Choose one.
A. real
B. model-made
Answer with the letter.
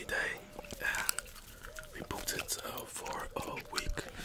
A